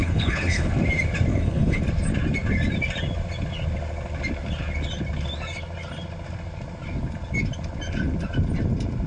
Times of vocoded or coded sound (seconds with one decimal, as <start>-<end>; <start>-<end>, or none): 0.0-0.7; 1.3-1.8